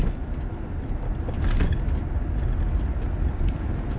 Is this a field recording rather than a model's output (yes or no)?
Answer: yes